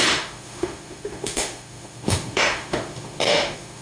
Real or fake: fake